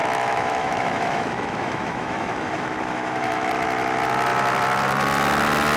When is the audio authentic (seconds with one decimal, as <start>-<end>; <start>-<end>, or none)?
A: 3.5-5.8